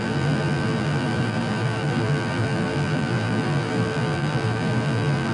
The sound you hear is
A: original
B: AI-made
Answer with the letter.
B